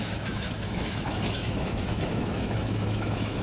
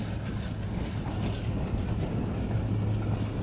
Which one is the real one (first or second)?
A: second